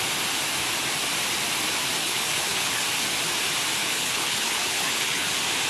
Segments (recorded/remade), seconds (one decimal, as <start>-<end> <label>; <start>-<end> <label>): 0.0-2.0 recorded; 2.0-2.8 remade; 2.8-3.8 recorded; 3.8-5.3 remade; 5.3-5.7 recorded